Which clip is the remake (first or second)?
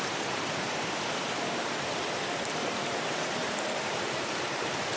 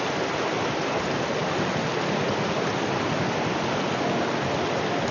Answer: first